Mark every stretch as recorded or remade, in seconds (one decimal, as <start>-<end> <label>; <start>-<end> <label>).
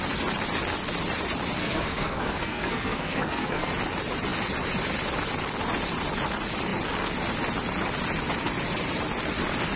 0.0-1.6 recorded; 1.6-3.7 remade; 3.7-9.8 recorded